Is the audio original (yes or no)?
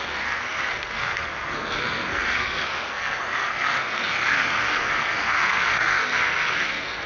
no